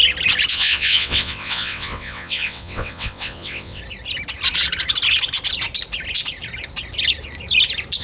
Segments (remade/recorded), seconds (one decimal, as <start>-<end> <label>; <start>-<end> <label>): 0.0-0.5 recorded; 0.5-3.8 remade; 3.8-8.0 recorded

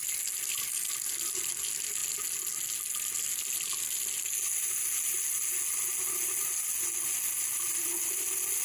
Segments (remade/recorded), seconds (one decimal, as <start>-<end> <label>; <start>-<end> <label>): 0.0-8.6 recorded

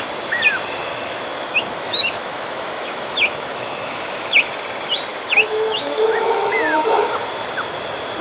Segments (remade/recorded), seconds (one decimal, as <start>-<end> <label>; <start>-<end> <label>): 0.0-0.9 recorded; 0.9-4.5 remade; 4.5-5.1 recorded; 5.1-7.1 remade; 7.1-8.2 recorded

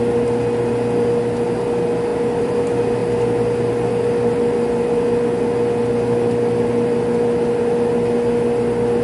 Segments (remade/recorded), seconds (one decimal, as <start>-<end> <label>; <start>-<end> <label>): 0.0-2.1 recorded; 2.1-2.6 remade; 2.6-9.0 recorded

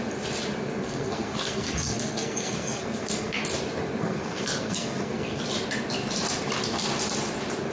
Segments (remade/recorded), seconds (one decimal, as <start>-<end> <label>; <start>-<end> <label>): 0.0-0.8 recorded; 0.8-3.4 remade; 3.4-4.0 recorded; 4.0-5.4 remade; 5.4-7.7 recorded

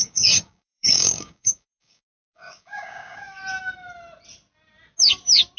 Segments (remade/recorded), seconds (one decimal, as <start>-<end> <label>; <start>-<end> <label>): 0.0-3.4 remade; 3.4-5.6 recorded

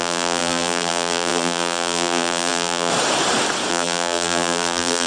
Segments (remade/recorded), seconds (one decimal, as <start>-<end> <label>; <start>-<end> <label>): 0.0-2.9 remade; 2.9-3.7 recorded; 3.7-5.1 remade